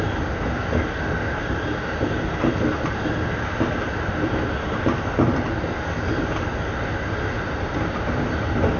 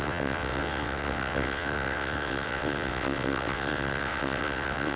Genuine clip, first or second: first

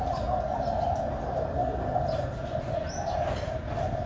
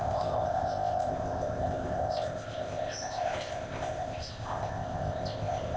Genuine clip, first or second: first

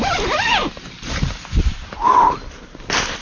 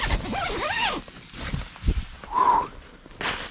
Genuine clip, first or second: second